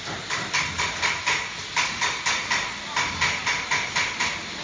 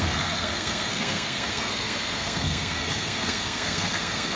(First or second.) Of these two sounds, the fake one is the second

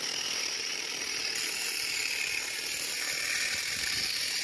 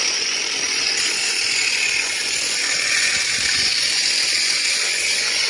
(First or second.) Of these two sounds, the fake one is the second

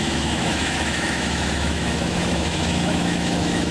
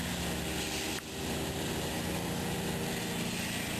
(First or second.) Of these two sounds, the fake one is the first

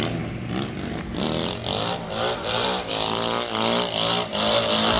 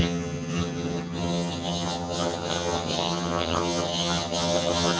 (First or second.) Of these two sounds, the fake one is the second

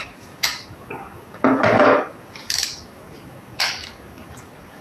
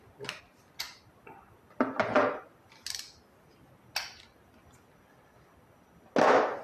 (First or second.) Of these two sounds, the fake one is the first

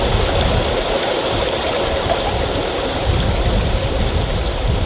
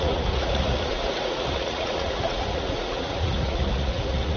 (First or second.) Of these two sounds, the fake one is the second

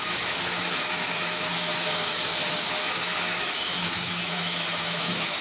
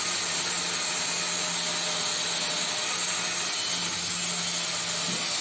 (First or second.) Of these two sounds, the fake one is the first